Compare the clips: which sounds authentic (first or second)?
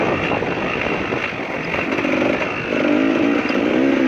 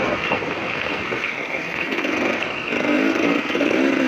first